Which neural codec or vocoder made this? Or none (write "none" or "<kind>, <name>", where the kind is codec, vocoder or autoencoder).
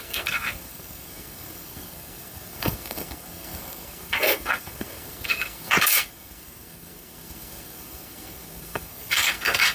codec, SNAC